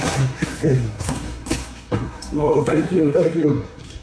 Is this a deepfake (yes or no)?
yes